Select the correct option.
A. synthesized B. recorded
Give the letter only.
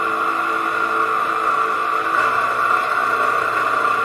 B